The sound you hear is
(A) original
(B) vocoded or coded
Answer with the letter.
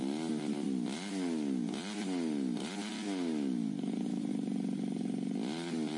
A